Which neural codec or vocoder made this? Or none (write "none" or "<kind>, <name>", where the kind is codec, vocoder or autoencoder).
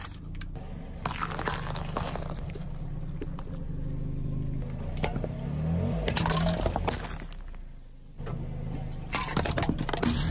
none